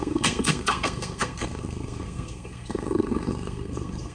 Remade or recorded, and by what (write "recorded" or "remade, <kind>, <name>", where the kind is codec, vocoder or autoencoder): remade, codec, SNAC